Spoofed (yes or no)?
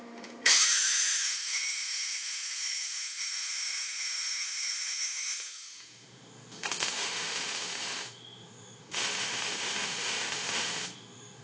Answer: yes